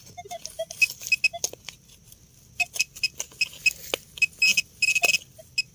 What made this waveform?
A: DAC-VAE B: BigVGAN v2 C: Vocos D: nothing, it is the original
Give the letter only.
D